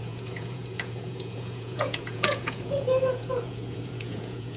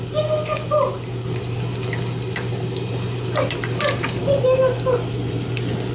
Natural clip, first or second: second